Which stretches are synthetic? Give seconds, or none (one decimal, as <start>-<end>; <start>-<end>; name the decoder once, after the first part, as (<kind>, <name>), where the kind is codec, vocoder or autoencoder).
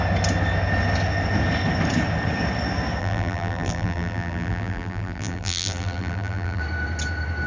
3.0-6.6 (vocoder, BigVGAN v2)